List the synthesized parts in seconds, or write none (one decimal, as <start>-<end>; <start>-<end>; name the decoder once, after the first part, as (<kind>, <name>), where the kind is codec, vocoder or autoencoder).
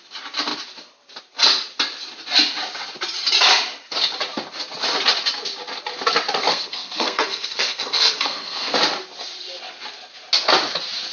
6.5-8.7 (codec, SNAC)